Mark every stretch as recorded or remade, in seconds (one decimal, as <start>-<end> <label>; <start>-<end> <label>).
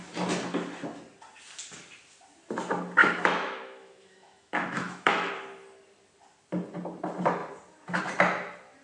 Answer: 0.0-3.0 recorded; 3.0-5.3 remade; 5.3-8.8 recorded